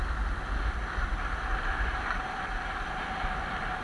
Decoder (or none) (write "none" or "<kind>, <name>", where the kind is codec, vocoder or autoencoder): none